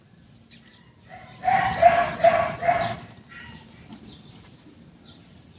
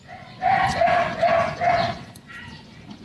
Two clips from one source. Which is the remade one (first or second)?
second